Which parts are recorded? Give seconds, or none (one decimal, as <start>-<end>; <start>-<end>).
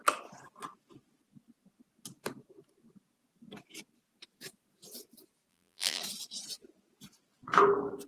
0.0-5.5; 6.0-8.1